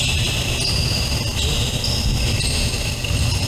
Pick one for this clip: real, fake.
real